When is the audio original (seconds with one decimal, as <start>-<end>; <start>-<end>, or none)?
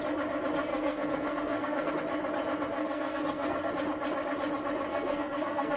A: 0.0-0.7; 1.9-2.8; 3.7-4.9